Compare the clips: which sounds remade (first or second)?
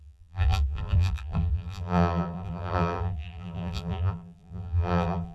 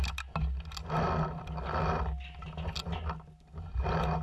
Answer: first